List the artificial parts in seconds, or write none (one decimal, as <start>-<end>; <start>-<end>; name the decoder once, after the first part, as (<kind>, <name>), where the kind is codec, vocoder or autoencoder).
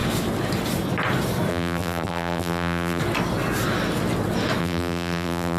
1.5-3.0 (vocoder, BigVGAN v2); 4.6-5.6